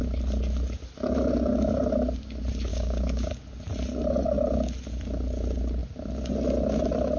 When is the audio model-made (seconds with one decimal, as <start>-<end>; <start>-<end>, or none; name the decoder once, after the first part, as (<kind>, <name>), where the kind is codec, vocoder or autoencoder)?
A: 2.7-3.3 (codec, DAC)